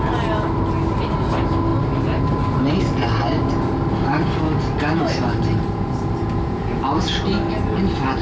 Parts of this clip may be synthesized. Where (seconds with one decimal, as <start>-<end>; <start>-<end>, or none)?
none

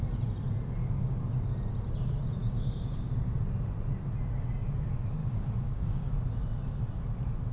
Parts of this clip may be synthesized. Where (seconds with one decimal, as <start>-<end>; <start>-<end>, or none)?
0.8-1.3; 2.4-3.1; 5.2-6.1

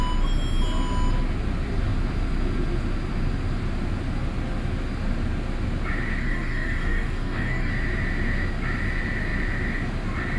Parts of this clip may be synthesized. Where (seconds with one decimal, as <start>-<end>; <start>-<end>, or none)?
6.2-7.7

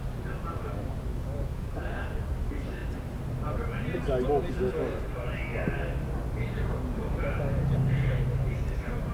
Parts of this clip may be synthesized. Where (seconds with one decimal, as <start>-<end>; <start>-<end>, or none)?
1.1-2.0